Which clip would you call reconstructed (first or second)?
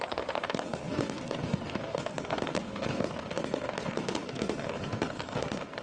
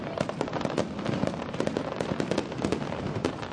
first